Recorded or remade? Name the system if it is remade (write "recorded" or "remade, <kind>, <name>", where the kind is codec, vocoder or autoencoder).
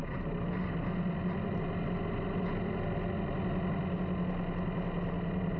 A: recorded